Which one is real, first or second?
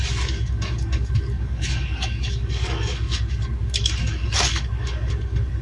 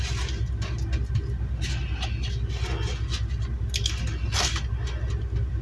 second